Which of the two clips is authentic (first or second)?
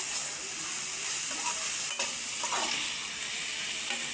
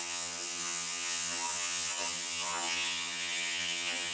first